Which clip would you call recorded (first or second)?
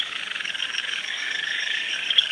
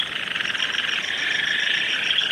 second